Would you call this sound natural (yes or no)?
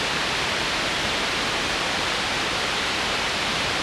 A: no